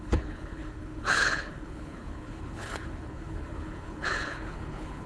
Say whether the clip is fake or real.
fake